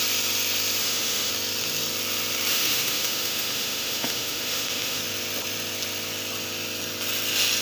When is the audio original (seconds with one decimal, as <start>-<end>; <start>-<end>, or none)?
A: 0.0-0.8; 1.3-2.5; 5.0-7.6